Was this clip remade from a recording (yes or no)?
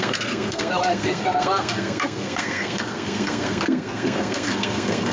yes